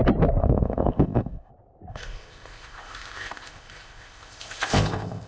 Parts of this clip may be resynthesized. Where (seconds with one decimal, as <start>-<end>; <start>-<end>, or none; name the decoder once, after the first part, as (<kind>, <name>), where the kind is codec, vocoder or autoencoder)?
0.4-1.5 (codec, ZipCodec); 1.9-5.3